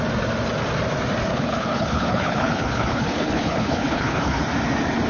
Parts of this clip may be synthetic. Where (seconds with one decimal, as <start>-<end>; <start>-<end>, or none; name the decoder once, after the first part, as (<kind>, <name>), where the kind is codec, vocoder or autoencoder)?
1.3-4.4 (codec, HILCodec)